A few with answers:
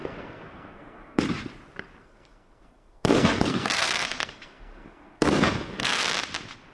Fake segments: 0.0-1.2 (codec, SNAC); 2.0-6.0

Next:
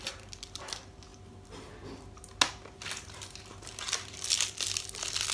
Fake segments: none

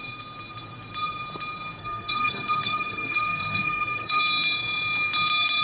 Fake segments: 1.8-4.2 (codec, SNAC)

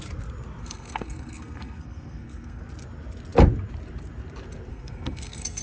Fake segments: 0.6-2.6 (codec, SNAC); 4.7-5.6

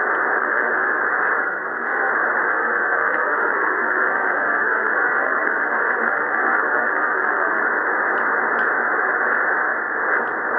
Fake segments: 0.4-1.0 (codec, SNAC); 1.4-2.1; 2.5-7.6

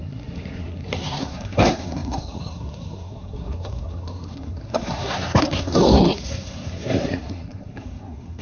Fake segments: 0.0-8.4 (codec, SNAC)